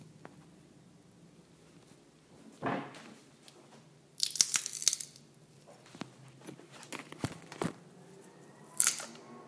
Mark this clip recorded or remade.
recorded